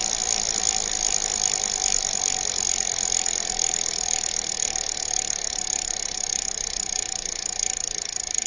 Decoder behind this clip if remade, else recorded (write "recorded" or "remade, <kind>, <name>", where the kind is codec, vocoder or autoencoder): recorded